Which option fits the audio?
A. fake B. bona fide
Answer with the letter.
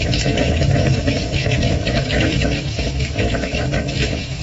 A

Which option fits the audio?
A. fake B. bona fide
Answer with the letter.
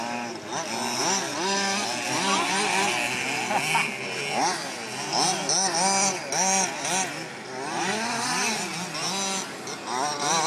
B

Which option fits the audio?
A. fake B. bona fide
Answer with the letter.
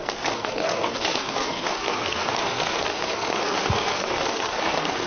A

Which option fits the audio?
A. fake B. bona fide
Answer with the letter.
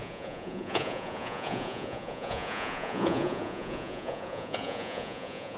A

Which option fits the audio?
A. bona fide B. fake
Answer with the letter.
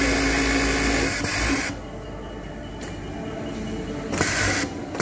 A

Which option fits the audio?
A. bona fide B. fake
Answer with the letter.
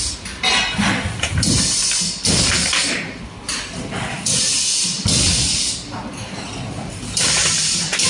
A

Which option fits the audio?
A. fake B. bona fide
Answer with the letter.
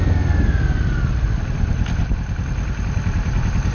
B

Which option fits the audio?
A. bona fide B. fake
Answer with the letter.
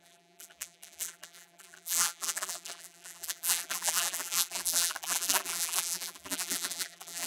B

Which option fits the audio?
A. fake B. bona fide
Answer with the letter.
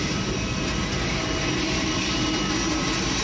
B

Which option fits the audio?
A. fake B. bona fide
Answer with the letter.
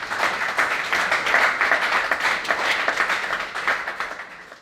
B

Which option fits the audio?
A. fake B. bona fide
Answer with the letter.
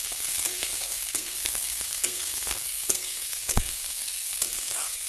A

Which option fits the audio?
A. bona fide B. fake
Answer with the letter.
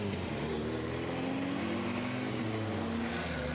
A